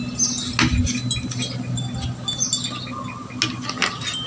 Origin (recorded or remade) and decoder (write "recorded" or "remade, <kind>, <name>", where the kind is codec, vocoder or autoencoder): recorded